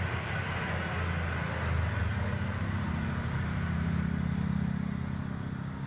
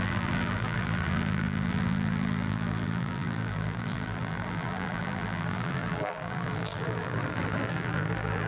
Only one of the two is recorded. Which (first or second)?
first